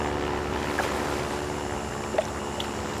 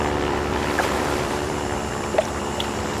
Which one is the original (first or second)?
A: first